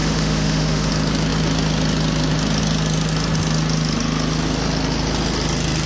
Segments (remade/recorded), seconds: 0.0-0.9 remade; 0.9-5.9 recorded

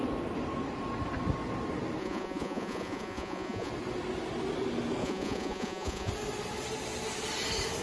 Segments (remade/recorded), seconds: 0.0-2.0 recorded; 2.0-3.7 remade; 3.7-5.0 recorded; 5.0-6.1 remade; 6.1-7.8 recorded

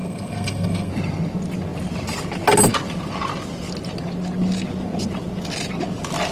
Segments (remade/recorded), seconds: 0.0-0.9 remade; 0.9-6.3 recorded

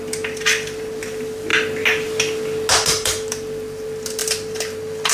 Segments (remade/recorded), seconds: 0.0-1.5 remade; 1.5-2.7 recorded; 2.7-5.1 remade

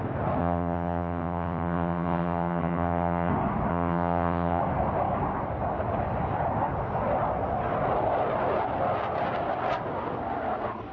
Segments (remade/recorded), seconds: 0.0-0.4 recorded; 0.4-3.3 remade; 3.3-3.7 recorded; 3.7-4.6 remade; 4.6-10.9 recorded